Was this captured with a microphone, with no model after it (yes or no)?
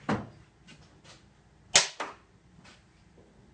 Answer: yes